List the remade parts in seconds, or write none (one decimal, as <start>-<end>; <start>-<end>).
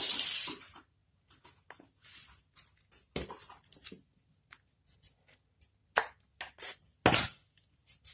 none